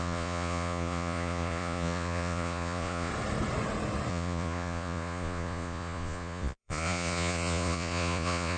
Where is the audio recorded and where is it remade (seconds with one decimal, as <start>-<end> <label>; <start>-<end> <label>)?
0.0-3.1 remade; 3.1-4.1 recorded; 4.1-8.6 remade